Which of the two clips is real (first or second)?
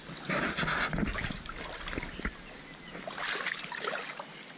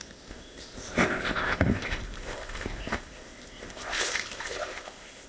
first